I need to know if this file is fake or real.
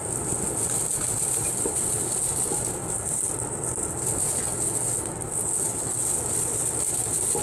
real